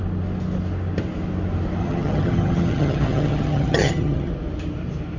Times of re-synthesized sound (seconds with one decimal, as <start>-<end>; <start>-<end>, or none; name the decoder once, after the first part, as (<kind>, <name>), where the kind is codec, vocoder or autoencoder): 1.8-4.3 (vocoder, HiFi-GAN)